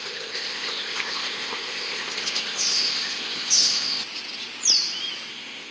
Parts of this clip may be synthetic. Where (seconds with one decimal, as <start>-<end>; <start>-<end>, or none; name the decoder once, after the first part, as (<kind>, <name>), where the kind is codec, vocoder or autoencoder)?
0.0-4.0 (codec, ZipCodec); 5.3-5.7